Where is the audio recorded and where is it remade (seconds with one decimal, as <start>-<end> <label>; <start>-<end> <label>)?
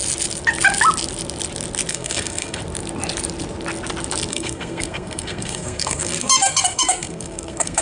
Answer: 0.0-1.9 recorded; 1.9-2.6 remade; 2.6-4.3 recorded; 4.3-7.8 remade